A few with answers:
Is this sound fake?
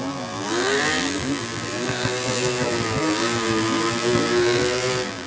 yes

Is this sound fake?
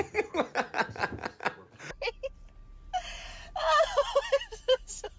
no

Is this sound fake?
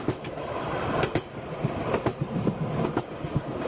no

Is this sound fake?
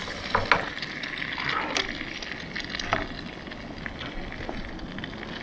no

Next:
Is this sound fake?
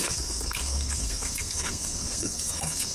yes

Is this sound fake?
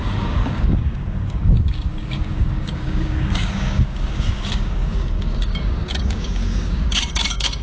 yes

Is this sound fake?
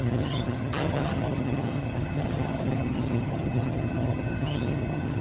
yes